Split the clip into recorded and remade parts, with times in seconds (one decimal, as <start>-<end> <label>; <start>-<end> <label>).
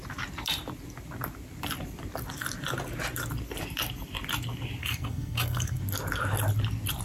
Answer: 0.0-4.8 recorded; 4.8-5.8 remade; 5.8-7.0 recorded